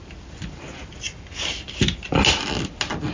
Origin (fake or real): real